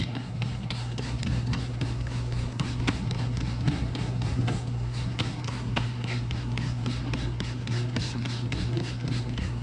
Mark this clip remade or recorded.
remade